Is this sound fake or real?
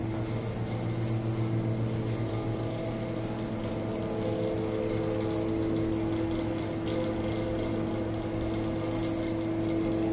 real